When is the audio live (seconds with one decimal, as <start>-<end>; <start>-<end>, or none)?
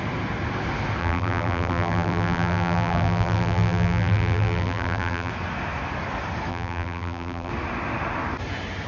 0.0-1.0; 5.3-6.5; 7.5-8.9